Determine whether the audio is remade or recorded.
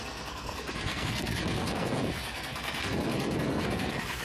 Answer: remade